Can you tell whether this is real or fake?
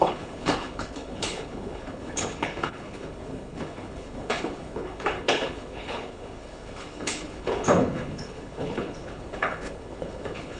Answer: fake